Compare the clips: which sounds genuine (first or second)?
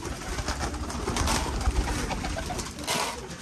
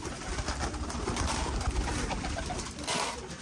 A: first